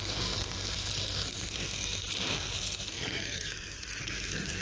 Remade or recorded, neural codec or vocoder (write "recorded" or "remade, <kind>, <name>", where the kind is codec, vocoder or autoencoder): remade, codec, SNAC